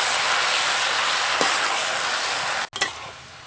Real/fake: real